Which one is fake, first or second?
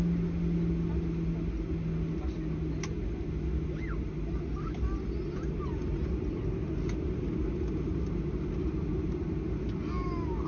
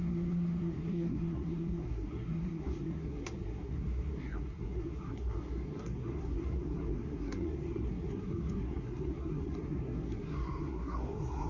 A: second